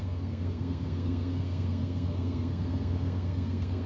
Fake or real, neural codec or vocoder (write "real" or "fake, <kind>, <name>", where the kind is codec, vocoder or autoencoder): fake, codec, SNAC